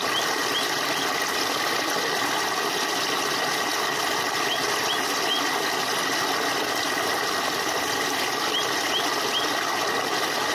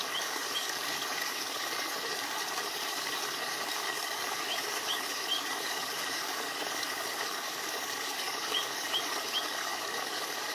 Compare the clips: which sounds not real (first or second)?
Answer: second